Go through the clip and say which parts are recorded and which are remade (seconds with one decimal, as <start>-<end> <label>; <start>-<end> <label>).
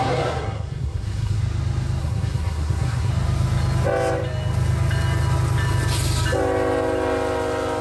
0.0-1.4 remade; 1.4-2.0 recorded; 2.0-3.1 remade; 3.1-7.8 recorded